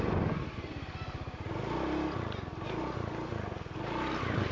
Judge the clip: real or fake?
real